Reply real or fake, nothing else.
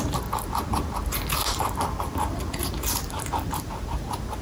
real